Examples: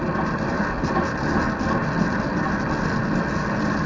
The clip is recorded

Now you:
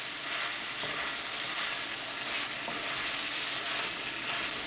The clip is recorded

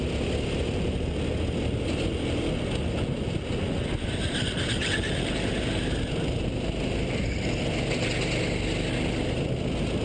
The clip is recorded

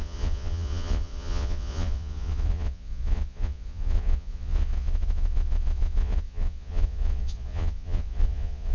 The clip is remade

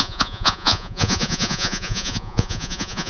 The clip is remade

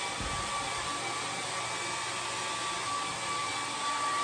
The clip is recorded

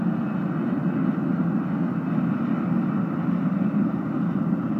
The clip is recorded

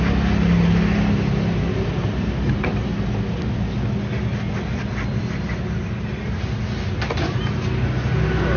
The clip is recorded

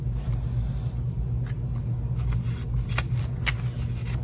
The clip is recorded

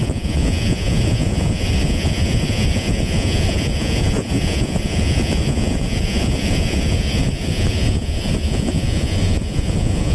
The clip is remade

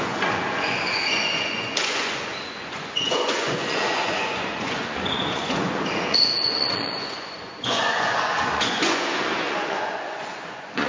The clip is remade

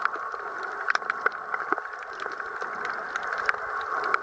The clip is recorded